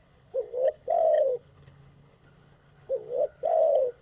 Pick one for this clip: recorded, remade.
remade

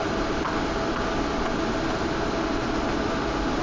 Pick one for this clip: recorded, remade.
recorded